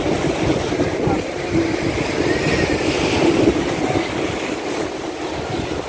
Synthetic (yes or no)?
no